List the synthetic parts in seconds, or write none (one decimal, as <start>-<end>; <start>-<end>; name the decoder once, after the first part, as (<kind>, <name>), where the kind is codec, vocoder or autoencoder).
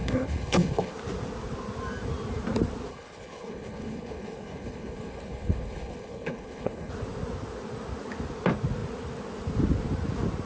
0.0-0.9 (codec, HILCodec); 2.9-6.9